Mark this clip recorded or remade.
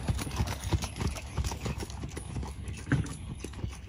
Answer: remade